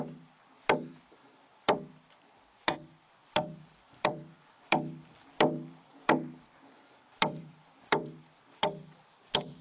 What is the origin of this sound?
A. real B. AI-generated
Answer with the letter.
B